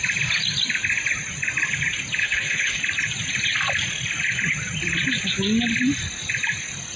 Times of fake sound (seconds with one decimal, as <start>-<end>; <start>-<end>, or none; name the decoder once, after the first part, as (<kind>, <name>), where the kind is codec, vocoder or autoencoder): 2.2-2.8 (codec, HILCodec)